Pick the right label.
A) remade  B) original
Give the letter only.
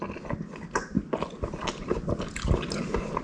B